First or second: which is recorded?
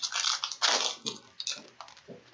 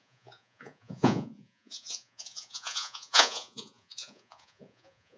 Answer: first